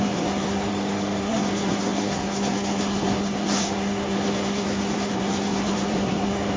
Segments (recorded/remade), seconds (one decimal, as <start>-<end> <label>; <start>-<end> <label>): 0.0-0.7 remade; 0.7-1.2 recorded; 1.2-6.6 remade